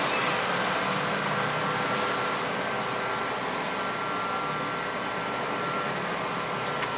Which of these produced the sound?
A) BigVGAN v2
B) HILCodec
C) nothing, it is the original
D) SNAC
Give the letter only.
C